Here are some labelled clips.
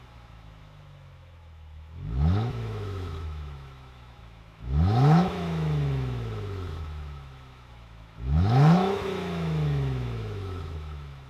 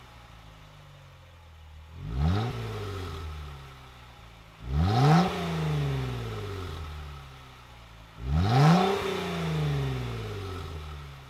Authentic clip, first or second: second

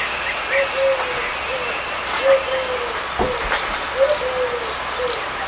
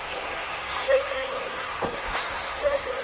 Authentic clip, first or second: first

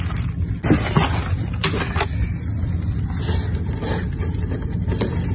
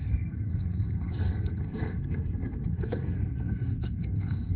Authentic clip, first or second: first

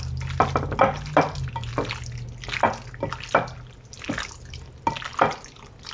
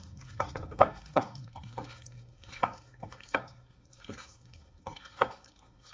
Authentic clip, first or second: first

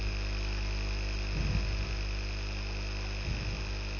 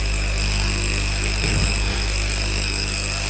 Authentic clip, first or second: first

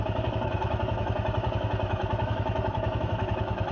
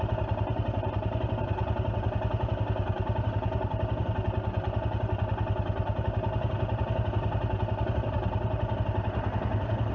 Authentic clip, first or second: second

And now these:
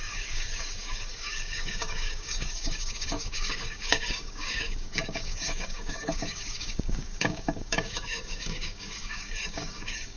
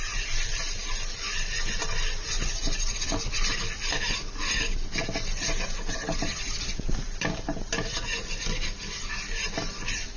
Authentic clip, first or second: second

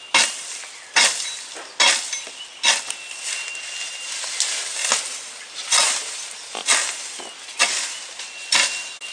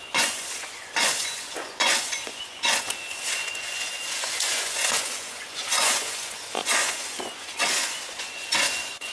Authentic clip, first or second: first